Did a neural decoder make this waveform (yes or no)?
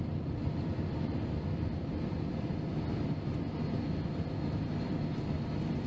no